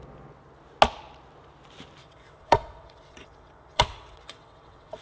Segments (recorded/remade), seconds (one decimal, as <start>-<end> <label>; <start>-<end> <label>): 0.0-2.0 recorded; 2.0-5.0 remade